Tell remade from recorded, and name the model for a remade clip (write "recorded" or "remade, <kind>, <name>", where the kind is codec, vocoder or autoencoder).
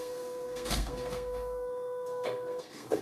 remade, codec, SNAC